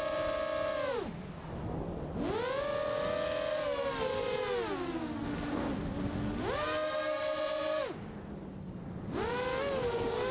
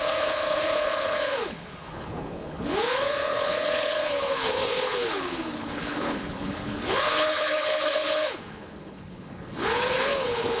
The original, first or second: first